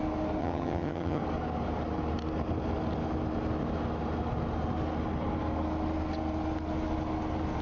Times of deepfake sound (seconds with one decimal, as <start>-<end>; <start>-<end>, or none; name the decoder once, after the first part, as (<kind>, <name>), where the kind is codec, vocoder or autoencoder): 0.4-1.2 (vocoder, HiFi-GAN)